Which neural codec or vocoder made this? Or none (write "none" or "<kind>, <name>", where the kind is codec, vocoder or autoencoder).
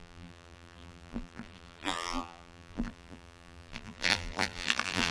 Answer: vocoder, BigVGAN v2